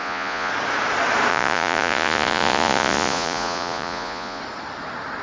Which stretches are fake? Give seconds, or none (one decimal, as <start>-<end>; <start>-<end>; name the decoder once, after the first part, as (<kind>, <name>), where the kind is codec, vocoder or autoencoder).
0.0-0.5 (vocoder, Vocos); 1.3-4.4